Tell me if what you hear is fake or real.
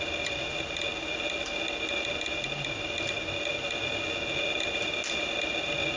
real